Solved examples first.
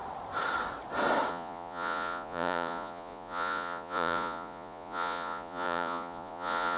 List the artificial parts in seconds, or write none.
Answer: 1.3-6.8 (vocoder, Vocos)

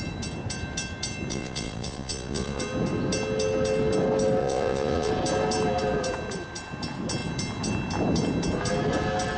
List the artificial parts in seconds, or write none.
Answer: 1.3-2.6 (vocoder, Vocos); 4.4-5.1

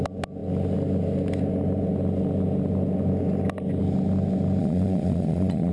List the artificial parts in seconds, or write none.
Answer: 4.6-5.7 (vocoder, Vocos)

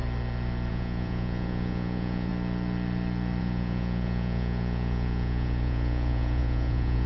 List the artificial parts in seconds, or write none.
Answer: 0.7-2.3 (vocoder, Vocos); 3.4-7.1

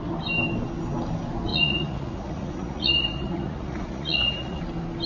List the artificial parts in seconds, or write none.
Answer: 1.5-4.6 (vocoder, Vocos)

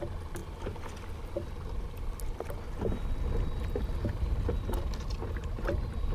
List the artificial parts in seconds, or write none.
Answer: none

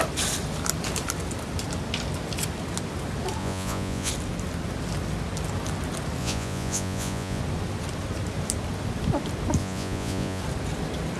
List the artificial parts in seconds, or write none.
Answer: 3.4-4.1 (vocoder, Vocos); 6.2-7.4; 9.6-10.4